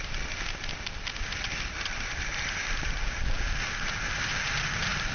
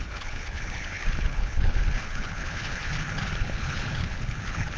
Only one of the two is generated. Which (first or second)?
second